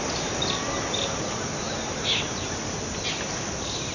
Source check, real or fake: real